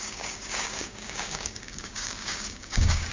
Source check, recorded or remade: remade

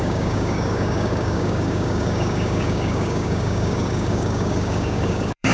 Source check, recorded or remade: remade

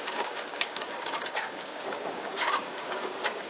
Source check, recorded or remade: remade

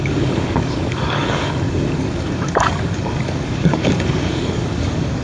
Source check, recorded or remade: remade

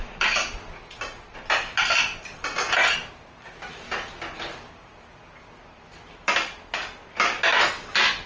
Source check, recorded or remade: recorded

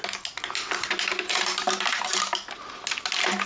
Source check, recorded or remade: recorded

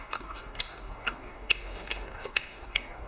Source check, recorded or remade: remade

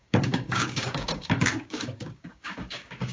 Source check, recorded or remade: remade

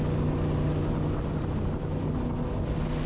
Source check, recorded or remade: recorded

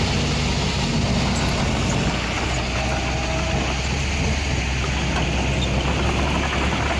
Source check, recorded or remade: recorded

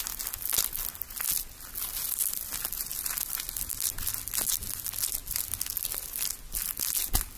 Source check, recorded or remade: recorded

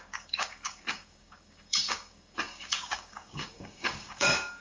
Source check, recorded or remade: remade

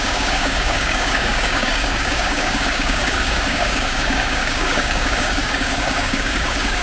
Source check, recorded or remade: remade